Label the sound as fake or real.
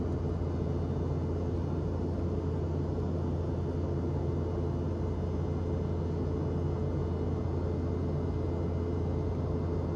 real